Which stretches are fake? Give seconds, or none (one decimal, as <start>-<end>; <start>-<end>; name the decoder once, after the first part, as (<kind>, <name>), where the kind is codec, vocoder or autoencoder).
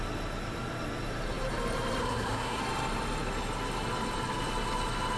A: 2.0-2.6 (codec, SNAC)